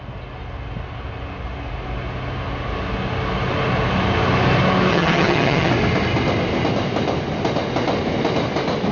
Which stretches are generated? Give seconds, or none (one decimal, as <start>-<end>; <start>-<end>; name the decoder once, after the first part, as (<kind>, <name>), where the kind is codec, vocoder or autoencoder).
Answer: 4.9-5.7 (vocoder, HiFi-GAN)